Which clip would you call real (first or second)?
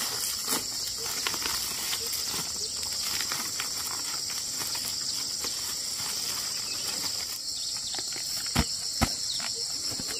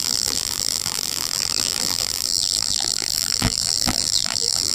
first